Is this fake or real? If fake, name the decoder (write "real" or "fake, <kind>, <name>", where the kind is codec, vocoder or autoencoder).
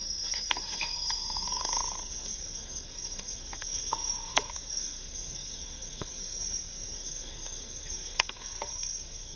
fake, codec, SNAC